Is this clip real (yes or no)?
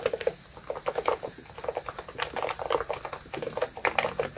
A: yes